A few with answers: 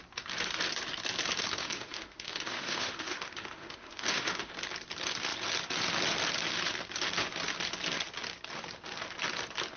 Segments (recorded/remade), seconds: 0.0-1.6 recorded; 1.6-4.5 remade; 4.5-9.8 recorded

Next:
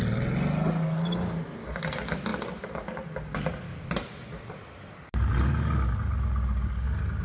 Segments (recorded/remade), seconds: 0.0-7.2 recorded